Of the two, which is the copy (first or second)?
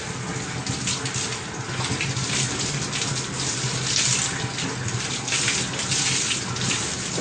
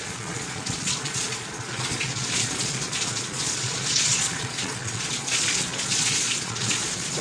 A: second